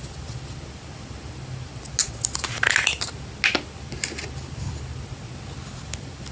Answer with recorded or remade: recorded